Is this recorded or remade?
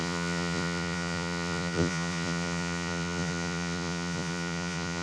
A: remade